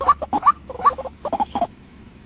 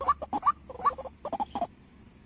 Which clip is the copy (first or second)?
first